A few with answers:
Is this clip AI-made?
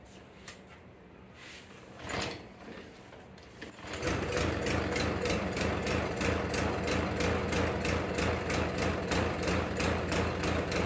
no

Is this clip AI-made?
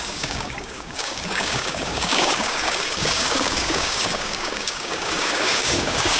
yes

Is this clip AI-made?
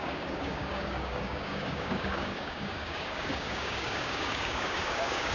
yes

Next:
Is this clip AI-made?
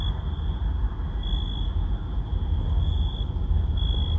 no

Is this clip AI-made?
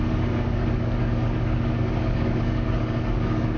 yes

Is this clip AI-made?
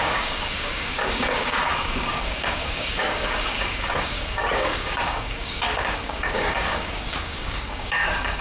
yes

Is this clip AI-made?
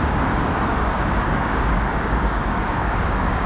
yes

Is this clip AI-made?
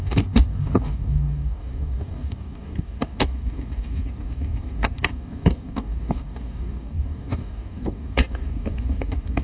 yes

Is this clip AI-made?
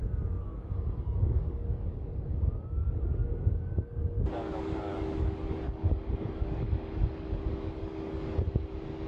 yes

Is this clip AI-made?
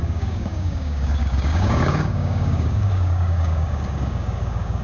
yes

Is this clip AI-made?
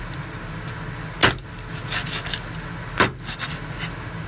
no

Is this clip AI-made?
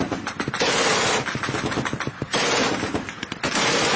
no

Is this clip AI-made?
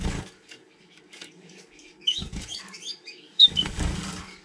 yes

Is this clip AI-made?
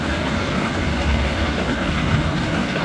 yes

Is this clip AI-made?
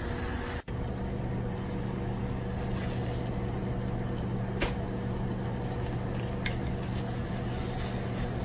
no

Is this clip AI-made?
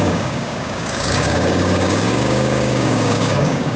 yes